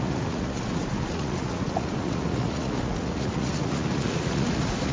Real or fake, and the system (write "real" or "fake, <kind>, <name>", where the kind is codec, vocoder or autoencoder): fake, vocoder, Vocos